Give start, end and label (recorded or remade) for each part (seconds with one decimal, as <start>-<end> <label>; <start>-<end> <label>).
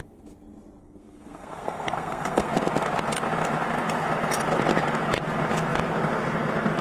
0.0-0.8 recorded; 0.8-2.5 remade; 2.5-6.8 recorded